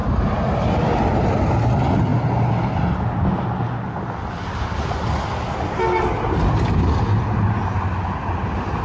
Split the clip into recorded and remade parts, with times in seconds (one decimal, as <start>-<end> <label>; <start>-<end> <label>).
0.0-8.8 recorded